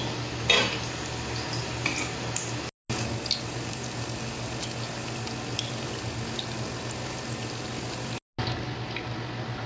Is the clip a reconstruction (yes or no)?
no